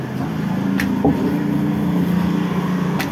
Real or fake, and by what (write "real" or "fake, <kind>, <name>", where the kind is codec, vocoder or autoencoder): real